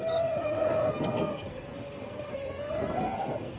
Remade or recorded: remade